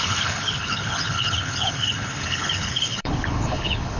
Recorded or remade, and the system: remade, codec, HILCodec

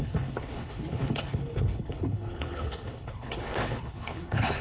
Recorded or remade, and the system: remade, codec, HILCodec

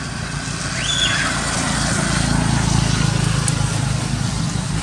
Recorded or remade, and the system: recorded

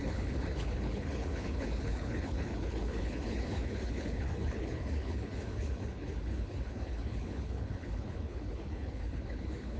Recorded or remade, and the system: remade, codec, HILCodec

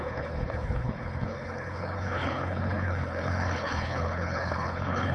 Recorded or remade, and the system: remade, codec, HILCodec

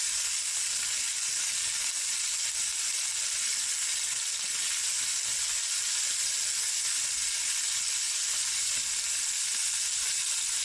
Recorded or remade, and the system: recorded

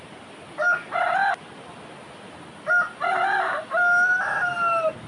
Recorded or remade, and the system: recorded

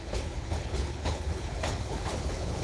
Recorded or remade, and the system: remade, codec, HILCodec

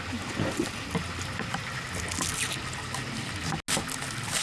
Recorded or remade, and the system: recorded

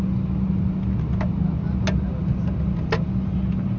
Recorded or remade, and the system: recorded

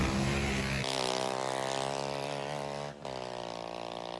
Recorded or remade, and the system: recorded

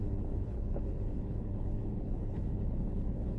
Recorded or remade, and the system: remade, codec, HILCodec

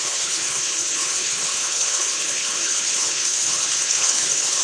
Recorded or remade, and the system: remade, codec, HILCodec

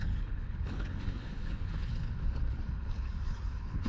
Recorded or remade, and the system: remade, codec, HILCodec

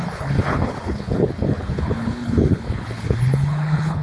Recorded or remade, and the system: remade, codec, HILCodec